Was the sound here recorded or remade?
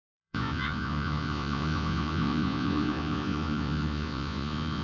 remade